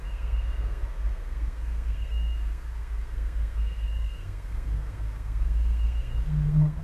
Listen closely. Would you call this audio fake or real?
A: fake